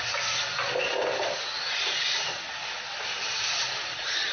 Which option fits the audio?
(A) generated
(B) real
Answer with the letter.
B